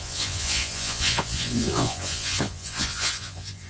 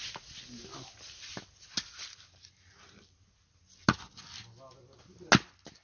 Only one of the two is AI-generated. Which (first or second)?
first